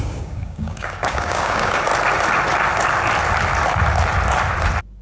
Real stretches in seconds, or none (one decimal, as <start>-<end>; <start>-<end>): 1.9-5.0